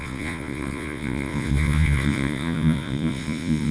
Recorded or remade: remade